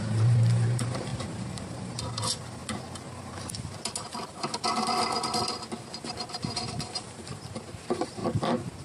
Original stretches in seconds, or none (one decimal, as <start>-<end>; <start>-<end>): 2.6-6.1